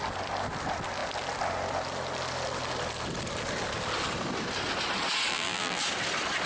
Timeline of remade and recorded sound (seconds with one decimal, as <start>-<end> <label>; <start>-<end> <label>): 0.0-5.3 recorded; 5.3-5.8 remade; 5.8-6.5 recorded